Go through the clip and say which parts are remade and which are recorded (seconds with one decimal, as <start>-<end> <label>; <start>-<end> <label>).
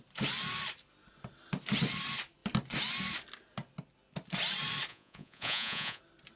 0.0-4.9 recorded; 4.9-6.0 remade; 6.0-6.4 recorded